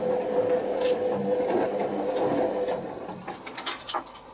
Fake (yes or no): no